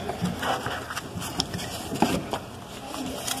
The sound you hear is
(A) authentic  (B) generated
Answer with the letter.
A